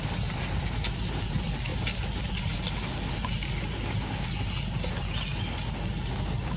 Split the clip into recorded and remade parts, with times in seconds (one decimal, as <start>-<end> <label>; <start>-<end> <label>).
0.0-6.6 recorded